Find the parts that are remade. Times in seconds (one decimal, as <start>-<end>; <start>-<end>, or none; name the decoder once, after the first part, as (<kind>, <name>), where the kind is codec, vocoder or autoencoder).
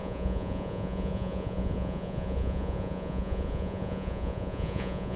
0.0-5.2 (vocoder, Vocos)